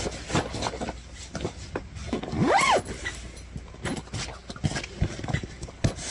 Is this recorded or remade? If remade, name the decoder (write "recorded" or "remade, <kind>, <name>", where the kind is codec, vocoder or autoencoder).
recorded